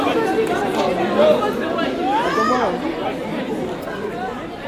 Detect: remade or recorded recorded